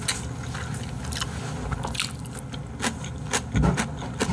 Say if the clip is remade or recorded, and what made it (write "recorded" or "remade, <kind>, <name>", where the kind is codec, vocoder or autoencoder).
recorded